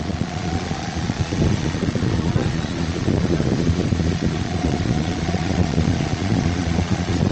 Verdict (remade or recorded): remade